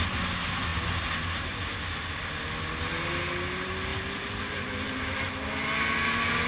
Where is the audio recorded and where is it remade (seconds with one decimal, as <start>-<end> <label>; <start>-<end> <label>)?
0.0-3.9 recorded; 3.9-5.3 remade; 5.3-6.5 recorded